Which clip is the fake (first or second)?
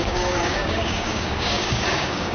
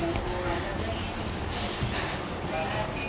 first